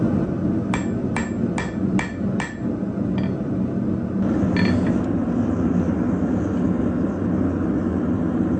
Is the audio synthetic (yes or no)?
no